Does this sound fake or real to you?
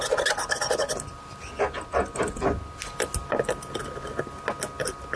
real